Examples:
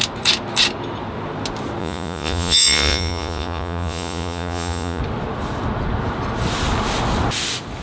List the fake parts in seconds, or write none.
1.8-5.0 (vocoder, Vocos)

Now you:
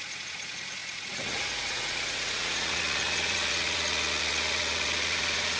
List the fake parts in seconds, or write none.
0.0-5.6 (vocoder, Vocos)

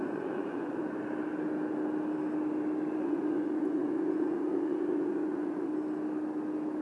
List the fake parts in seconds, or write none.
0.0-0.8 (vocoder, Vocos); 2.9-5.7

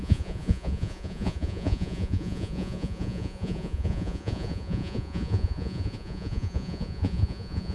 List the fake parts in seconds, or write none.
0.0-7.7 (vocoder, Vocos)